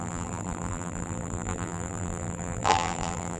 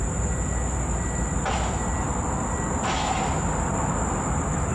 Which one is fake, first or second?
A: first